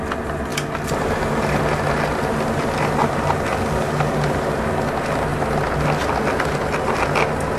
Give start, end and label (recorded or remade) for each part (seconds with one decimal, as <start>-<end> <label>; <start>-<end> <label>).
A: 0.0-7.6 recorded